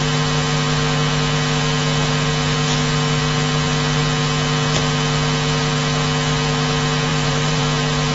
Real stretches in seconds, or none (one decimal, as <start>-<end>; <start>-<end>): 0.0-7.1; 7.6-8.1

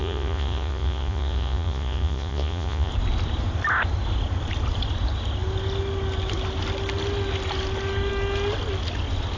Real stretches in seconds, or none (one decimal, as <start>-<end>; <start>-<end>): 2.9-9.4

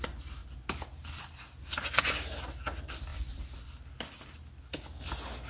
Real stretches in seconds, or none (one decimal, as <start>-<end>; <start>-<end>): 0.0-5.5

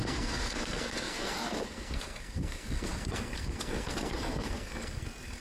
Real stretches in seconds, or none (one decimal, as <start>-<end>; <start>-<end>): none

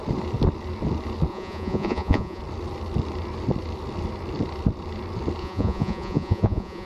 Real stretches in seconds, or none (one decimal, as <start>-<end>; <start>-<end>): 0.0-1.3; 2.4-5.4